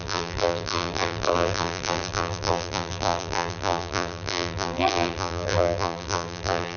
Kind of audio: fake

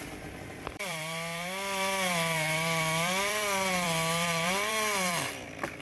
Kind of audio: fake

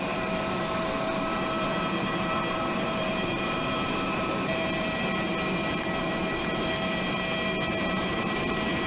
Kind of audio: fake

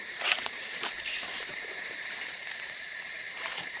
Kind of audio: fake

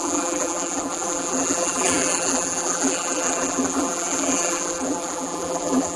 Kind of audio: fake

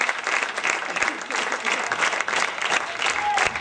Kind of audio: real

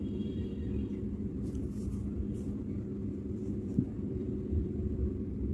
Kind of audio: fake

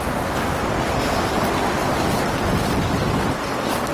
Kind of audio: fake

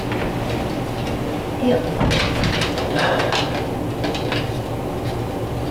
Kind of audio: real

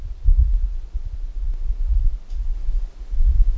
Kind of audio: real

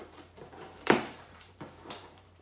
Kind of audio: fake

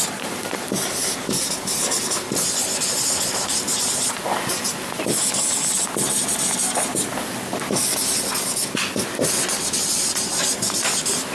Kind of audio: real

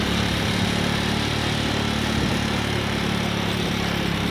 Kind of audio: real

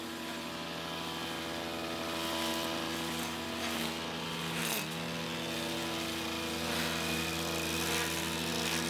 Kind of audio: real